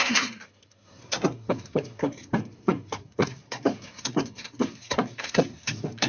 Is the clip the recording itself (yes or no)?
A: no